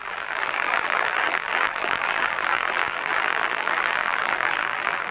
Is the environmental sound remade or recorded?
remade